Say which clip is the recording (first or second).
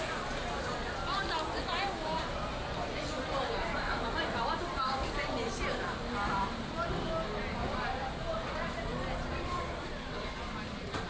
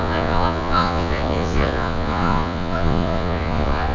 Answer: first